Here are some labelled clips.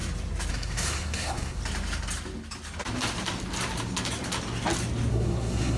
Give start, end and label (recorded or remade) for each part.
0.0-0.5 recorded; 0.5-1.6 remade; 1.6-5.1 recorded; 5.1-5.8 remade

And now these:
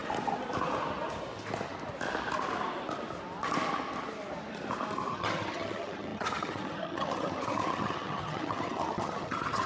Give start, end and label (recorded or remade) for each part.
0.0-5.1 recorded; 5.1-9.7 remade

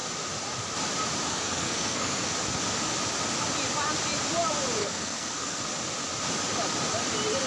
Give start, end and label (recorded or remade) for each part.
0.0-1.3 recorded; 1.3-2.3 remade; 2.3-4.8 recorded; 4.8-5.6 remade; 5.6-7.5 recorded